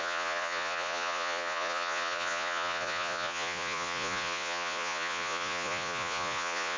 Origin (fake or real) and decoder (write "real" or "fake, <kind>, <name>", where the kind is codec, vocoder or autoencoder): fake, vocoder, Vocos